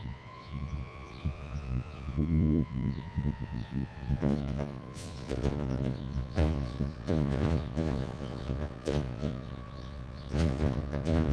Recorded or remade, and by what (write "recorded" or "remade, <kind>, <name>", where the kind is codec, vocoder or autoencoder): remade, vocoder, Vocos